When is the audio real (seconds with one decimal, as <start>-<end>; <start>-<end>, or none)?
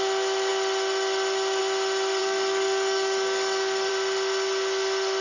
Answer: 0.0-2.2; 3.9-5.2